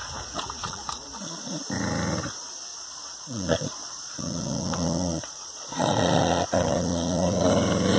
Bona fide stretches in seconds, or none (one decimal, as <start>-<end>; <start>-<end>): 1.5-2.7; 7.5-8.0